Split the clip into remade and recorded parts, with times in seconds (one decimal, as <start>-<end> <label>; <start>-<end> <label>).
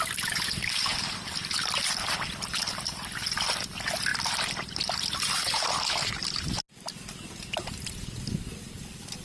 0.0-9.2 recorded